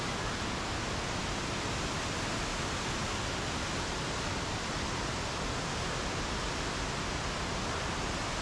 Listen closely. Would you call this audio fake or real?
real